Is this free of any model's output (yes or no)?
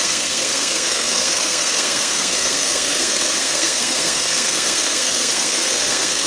no